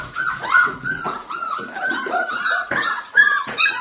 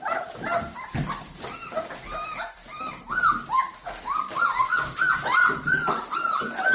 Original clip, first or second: second